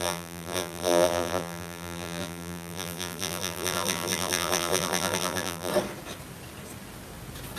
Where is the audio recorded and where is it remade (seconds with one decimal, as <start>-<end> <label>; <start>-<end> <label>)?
0.0-5.7 remade; 5.7-7.6 recorded